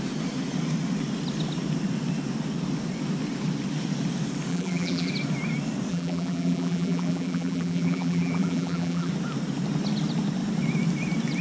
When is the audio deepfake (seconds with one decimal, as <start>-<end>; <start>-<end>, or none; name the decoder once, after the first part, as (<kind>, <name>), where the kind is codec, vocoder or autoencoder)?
4.5-5.1 (vocoder, BigVGAN v2); 5.9-9.1